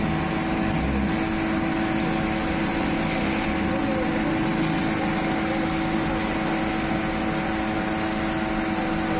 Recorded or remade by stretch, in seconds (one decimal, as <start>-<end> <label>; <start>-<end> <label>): 0.0-9.2 recorded